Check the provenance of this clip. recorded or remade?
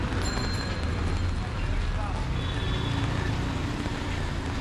recorded